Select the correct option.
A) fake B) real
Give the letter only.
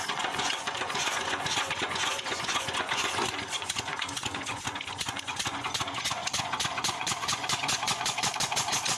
A